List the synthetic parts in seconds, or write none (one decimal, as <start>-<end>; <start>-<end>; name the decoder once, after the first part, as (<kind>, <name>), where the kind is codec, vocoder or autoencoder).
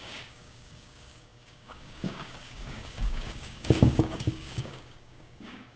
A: 0.0-5.8 (codec, DAC)